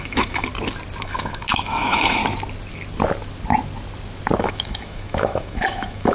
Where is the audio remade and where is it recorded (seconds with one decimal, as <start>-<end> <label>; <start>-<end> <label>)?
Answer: 0.0-0.5 remade; 0.5-1.0 recorded; 1.0-2.2 remade; 2.2-4.4 recorded; 4.4-6.1 remade